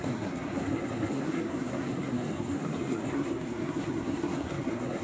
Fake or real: fake